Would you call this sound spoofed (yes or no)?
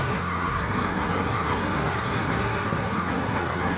yes